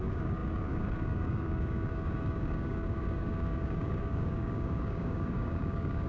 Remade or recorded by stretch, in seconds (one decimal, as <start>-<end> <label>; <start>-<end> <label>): 0.0-6.1 remade